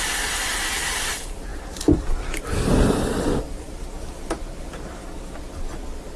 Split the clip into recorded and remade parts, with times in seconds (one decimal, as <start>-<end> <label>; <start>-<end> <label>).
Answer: 0.0-6.2 recorded